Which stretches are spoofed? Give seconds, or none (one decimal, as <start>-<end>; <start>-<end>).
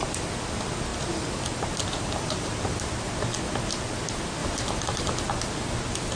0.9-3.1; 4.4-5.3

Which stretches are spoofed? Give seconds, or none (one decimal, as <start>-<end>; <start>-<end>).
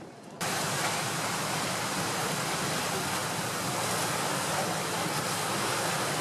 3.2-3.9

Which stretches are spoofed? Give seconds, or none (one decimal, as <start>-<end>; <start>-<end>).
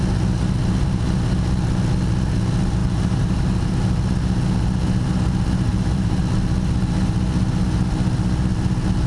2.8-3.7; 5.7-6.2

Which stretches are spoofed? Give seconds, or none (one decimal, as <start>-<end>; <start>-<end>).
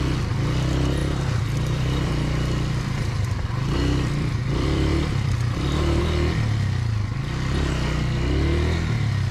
1.0-6.0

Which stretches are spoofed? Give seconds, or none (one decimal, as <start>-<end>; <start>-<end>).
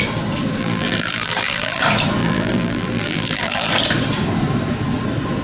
0.6-1.8; 2.2-3.7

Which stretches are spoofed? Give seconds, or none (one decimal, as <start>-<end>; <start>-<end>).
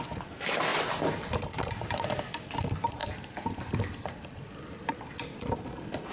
0.7-2.2; 3.0-5.5